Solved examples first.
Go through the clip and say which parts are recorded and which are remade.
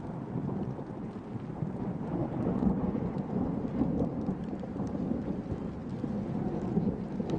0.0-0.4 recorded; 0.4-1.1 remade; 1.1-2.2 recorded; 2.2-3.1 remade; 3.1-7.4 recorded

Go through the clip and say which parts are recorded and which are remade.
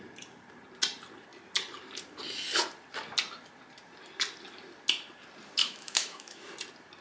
0.0-5.6 recorded; 5.6-6.4 remade; 6.4-7.0 recorded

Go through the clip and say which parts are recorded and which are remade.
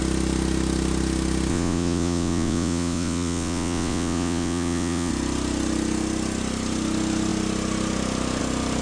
0.0-1.5 recorded; 1.5-5.1 remade; 5.1-8.8 recorded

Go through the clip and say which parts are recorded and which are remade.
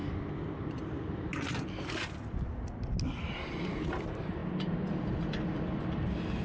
0.0-6.4 recorded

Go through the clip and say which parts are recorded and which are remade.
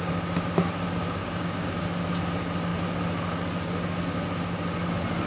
0.0-1.2 recorded; 1.2-1.8 remade; 1.8-5.3 recorded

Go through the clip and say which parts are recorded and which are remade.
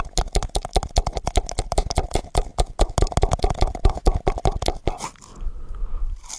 0.0-6.4 recorded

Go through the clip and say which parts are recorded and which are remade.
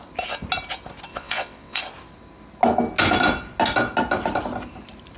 0.0-1.1 recorded; 1.1-1.8 remade; 1.8-5.2 recorded